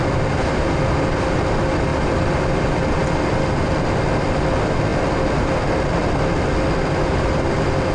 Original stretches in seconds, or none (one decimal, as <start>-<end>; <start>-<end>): 0.0-7.9